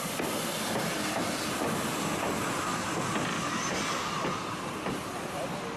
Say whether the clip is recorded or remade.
recorded